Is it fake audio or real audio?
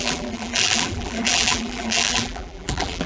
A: fake